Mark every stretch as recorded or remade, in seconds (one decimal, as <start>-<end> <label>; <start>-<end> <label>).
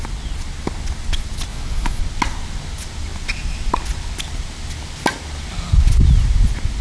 0.0-1.5 recorded; 1.5-2.0 remade; 2.0-6.8 recorded